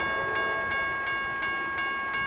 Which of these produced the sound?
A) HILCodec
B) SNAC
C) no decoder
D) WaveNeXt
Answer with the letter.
C